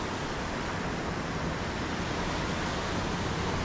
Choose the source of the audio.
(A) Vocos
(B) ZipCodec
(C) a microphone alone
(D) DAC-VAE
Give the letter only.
C